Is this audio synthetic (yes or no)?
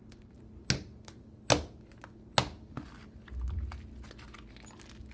no